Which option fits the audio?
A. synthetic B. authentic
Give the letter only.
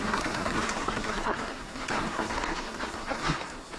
A